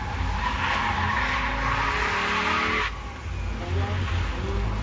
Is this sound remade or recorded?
recorded